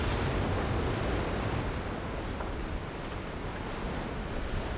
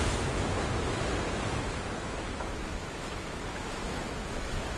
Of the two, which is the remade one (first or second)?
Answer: second